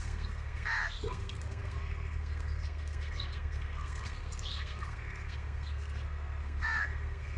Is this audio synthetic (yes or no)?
yes